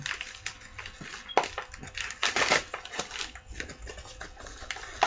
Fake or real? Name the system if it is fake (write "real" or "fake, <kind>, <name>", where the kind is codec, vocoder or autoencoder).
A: real